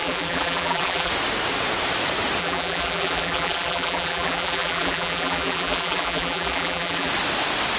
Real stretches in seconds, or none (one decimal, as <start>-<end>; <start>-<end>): 1.1-2.4; 7.1-7.8